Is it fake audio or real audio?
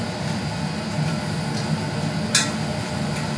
real